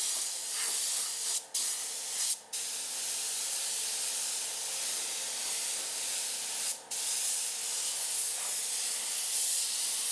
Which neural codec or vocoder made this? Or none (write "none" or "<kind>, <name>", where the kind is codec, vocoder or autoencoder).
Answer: none